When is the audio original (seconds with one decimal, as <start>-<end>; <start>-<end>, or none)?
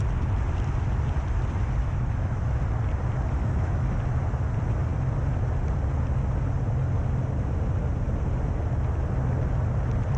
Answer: 0.0-1.8; 2.6-3.4; 4.0-10.2